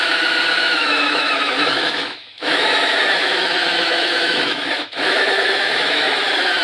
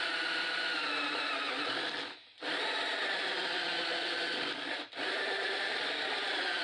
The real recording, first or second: second